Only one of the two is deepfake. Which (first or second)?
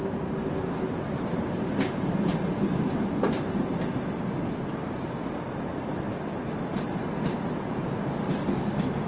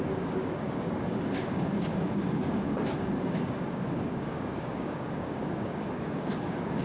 second